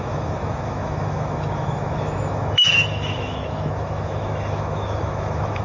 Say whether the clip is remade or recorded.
remade